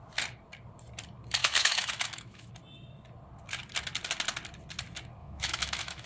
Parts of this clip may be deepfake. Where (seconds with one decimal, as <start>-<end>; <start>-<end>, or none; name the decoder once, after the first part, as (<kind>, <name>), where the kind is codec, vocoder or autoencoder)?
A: 1.4-2.5 (autoencoder, DAC-VAE); 5.2-6.1